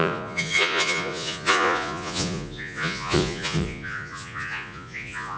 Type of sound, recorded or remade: remade